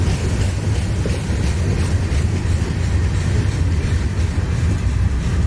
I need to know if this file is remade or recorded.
recorded